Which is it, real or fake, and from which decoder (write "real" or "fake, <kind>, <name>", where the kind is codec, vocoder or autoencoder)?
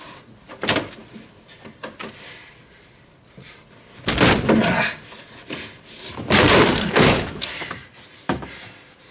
real